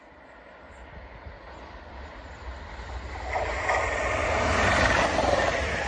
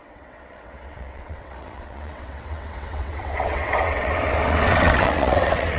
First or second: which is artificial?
second